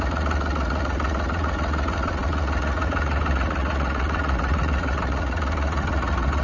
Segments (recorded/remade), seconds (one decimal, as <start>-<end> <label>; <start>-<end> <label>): 0.0-6.4 remade